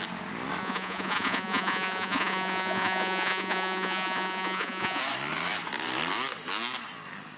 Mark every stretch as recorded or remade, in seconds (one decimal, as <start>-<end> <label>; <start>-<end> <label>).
0.0-0.6 recorded; 0.6-5.0 remade; 5.0-7.4 recorded